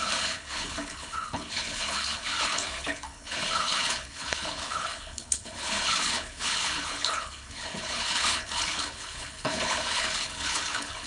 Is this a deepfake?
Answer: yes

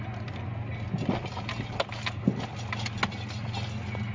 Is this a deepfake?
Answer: no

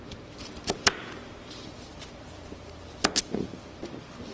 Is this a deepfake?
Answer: yes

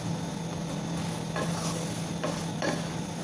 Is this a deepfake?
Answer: no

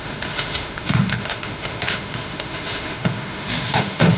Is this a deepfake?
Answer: yes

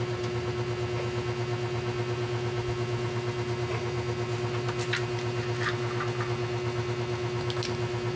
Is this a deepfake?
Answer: no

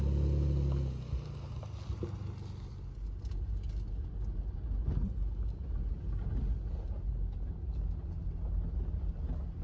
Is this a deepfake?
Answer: no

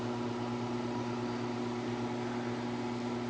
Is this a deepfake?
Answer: no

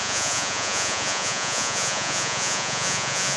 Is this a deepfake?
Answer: yes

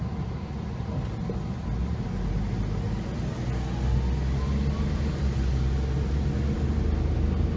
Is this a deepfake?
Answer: no